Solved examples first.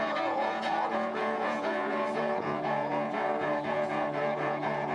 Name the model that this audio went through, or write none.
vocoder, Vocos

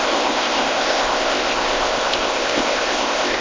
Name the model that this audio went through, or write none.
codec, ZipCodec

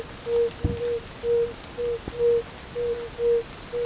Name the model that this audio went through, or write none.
none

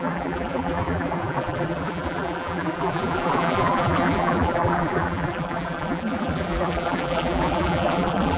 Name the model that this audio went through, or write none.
vocoder, BigVGAN v2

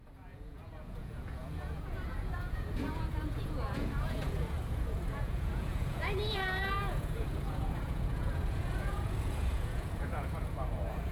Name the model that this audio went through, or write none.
vocoder, Vocos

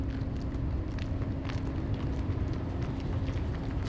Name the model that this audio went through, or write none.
none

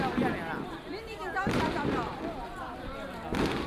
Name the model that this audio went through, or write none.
none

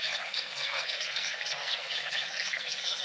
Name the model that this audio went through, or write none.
codec, SNAC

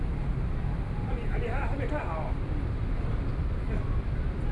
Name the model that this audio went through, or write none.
none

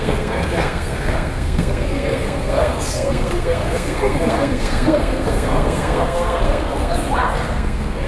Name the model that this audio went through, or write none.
codec, SNAC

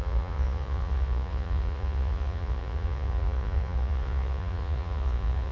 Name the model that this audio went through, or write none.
vocoder, Vocos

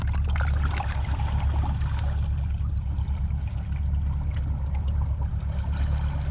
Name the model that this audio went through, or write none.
none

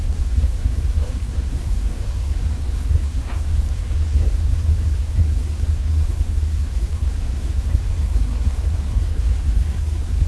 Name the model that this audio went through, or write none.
codec, SNAC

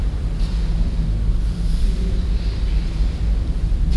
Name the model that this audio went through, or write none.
vocoder, BigVGAN v2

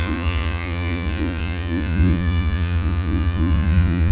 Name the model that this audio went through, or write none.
vocoder, Vocos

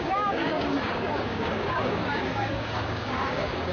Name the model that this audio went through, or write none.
codec, DAC